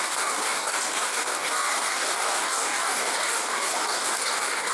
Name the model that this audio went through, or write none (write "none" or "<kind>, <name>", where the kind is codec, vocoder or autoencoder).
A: codec, DAC